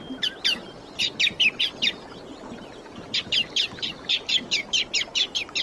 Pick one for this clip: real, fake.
real